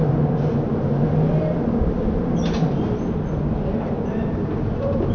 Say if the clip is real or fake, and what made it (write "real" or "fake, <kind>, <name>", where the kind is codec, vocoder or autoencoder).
real